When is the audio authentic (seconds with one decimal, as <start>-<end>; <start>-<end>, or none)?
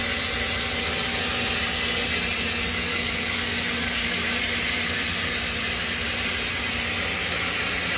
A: 0.0-2.9; 4.4-8.0